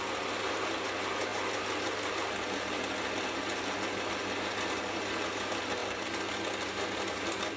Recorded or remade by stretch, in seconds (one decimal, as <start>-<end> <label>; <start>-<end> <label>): 0.0-7.6 recorded